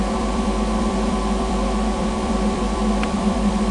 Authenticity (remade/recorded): remade